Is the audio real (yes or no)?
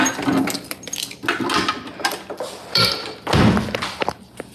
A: yes